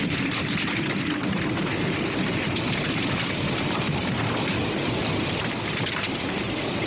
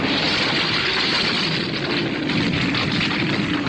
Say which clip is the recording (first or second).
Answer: second